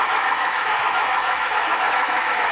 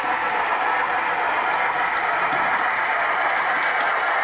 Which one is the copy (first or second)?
first